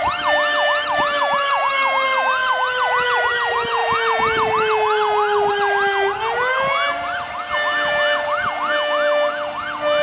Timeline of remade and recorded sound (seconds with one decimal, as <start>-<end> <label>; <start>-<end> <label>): 0.0-10.0 recorded